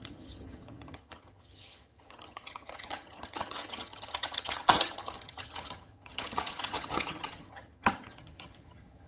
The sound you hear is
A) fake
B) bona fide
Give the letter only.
A